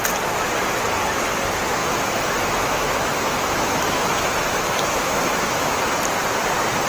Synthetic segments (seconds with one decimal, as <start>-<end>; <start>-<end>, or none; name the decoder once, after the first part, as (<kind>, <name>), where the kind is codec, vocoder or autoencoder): 1.8-5.8 (autoencoder, DAC-VAE)